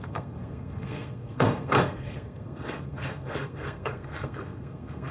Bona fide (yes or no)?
no